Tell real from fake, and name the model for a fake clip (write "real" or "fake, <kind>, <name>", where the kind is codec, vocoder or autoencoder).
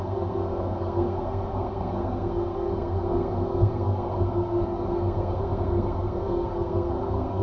fake, codec, SNAC